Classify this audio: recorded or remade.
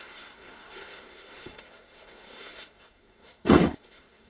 remade